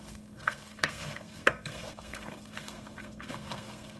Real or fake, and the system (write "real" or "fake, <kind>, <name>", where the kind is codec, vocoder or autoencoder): fake, codec, SNAC